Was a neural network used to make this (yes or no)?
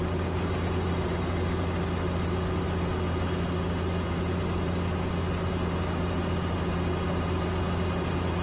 no